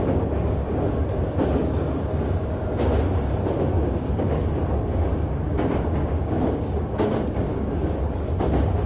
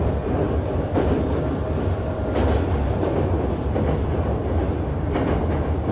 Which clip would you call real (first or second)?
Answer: second